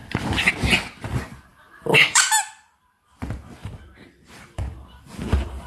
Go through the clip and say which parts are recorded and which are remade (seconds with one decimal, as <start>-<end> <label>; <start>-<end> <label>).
0.0-0.5 remade; 0.5-1.5 recorded; 1.5-2.2 remade; 2.2-3.6 recorded; 3.6-5.7 remade